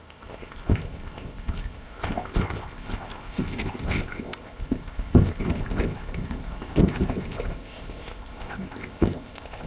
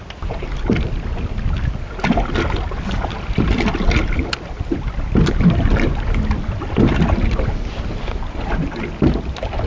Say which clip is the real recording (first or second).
second